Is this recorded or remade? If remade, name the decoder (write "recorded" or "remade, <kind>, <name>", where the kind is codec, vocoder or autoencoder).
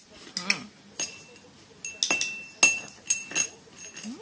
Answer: recorded